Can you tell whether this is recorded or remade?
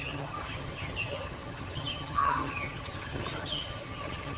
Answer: remade